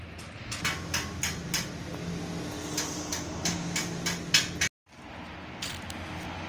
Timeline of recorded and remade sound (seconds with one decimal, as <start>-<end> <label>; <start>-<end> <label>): 0.0-6.5 recorded